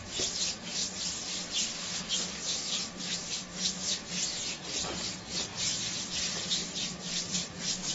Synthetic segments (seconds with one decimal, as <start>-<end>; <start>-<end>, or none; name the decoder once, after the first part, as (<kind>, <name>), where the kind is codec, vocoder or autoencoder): 0.8-1.4 (vocoder, BigVGAN v2); 6.6-7.3